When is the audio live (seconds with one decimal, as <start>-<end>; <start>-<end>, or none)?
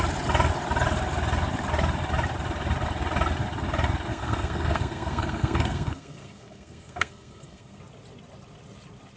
0.0-4.1; 7.8-9.2